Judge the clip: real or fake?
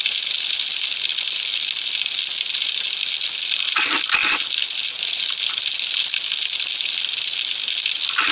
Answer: real